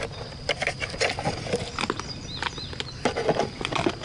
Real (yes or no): yes